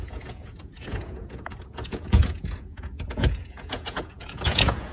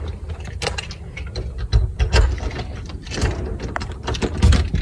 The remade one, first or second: first